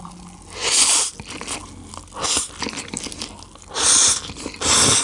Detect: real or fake real